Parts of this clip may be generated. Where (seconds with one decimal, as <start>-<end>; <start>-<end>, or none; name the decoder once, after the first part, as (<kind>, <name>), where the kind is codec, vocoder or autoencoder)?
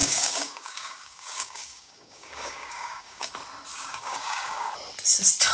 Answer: 0.0-3.3 (codec, DAC); 3.7-4.7